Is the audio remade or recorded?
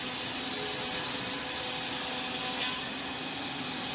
recorded